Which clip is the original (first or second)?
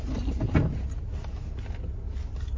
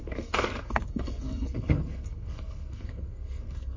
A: first